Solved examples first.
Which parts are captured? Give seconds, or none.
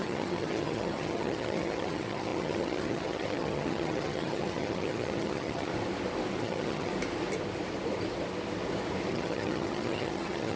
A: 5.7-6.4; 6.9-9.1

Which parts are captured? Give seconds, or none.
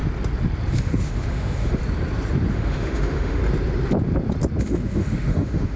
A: 0.0-0.7; 1.8-2.5; 3.4-4.6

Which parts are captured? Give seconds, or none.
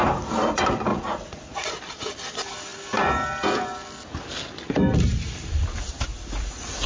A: 0.0-0.9; 1.8-6.1